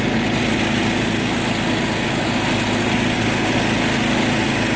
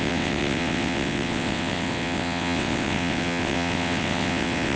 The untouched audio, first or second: first